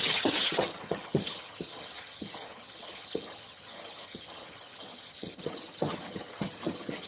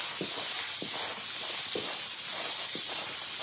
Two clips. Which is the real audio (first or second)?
second